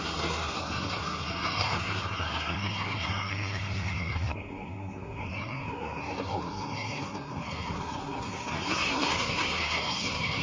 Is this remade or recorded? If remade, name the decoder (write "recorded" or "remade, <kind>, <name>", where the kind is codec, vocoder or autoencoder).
remade, codec, SNAC